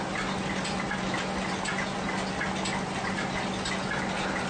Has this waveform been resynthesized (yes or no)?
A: no